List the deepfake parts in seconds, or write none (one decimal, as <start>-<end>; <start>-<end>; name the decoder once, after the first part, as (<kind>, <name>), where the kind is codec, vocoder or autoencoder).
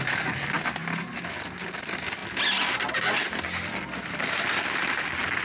none